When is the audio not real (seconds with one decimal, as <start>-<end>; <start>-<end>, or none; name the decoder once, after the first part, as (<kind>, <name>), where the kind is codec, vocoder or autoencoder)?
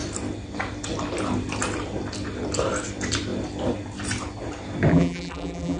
4.9-5.8 (vocoder, BigVGAN v2)